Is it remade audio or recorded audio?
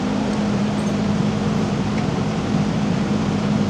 remade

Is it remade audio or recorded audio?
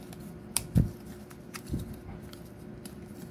remade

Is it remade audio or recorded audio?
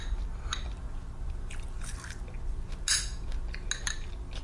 recorded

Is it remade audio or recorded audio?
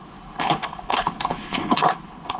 remade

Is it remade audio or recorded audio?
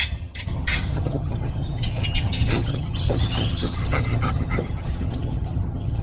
remade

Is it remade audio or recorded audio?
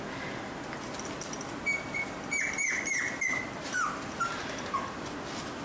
recorded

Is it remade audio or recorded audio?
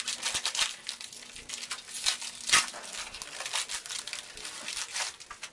recorded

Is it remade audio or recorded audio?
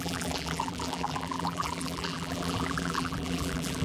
remade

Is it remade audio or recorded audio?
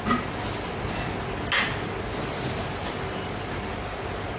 recorded